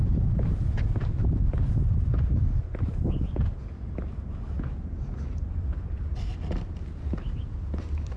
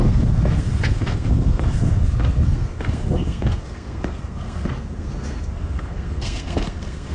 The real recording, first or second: first